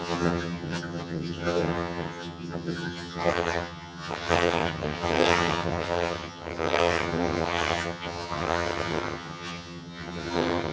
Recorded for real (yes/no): no